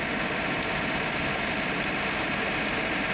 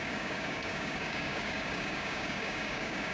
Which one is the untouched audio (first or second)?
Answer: first